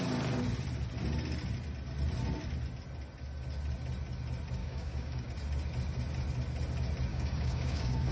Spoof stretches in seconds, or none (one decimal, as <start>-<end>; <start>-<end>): 4.6-5.3; 7.1-8.1